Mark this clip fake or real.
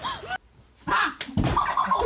real